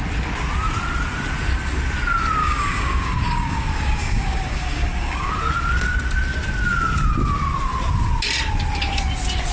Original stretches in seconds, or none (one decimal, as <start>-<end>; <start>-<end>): 0.0-2.4; 5.4-9.5